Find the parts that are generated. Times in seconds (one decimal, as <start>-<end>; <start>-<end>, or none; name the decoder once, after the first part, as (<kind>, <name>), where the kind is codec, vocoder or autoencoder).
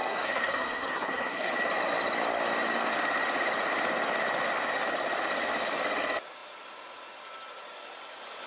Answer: 0.0-1.5 (codec, SNAC)